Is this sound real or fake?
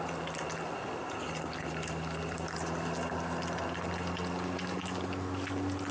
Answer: real